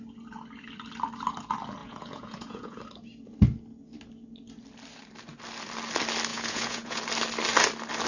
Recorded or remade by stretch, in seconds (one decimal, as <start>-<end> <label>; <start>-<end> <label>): 0.0-1.8 recorded; 1.8-2.8 remade; 2.8-6.3 recorded; 6.3-7.0 remade; 7.0-8.1 recorded